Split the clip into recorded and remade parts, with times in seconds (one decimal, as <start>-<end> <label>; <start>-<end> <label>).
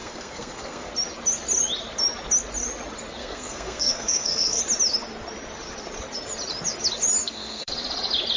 0.0-0.9 remade; 0.9-3.2 recorded; 3.2-4.6 remade; 4.6-7.2 recorded; 7.2-7.7 remade; 7.7-8.4 recorded